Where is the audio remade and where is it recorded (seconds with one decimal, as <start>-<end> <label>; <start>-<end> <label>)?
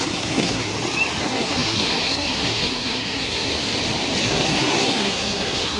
0.0-0.7 remade; 0.7-1.2 recorded; 1.2-3.5 remade; 3.5-4.2 recorded; 4.2-5.8 remade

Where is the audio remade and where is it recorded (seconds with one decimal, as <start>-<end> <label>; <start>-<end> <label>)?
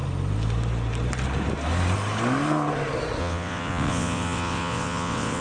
0.0-3.2 recorded; 3.2-5.4 remade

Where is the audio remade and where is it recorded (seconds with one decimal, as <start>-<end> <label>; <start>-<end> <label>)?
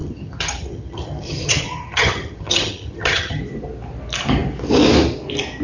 0.0-3.4 remade; 3.4-5.6 recorded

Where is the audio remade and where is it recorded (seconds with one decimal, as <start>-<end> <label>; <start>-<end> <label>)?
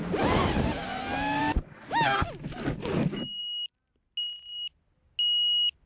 0.0-5.9 recorded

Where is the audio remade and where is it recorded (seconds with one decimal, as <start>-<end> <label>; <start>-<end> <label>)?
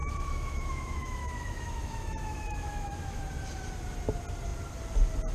0.0-3.2 remade; 3.2-5.3 recorded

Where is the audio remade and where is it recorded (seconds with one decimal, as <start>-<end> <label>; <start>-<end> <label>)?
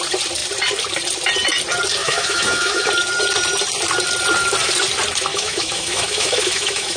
0.0-2.0 recorded; 2.0-2.9 remade; 2.9-5.3 recorded; 5.3-7.0 remade